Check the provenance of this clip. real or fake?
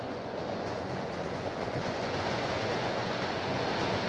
fake